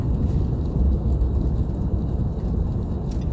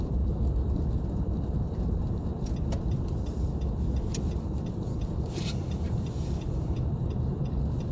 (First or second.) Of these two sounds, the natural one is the first